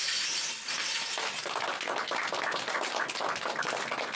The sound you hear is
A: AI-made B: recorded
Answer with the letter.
B